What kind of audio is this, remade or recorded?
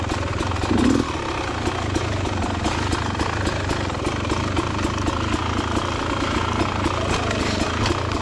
recorded